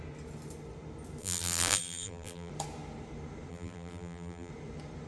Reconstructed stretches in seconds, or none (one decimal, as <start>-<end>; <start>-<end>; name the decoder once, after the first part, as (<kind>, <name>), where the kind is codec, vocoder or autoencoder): 1.2-2.5 (vocoder, BigVGAN v2); 3.5-4.5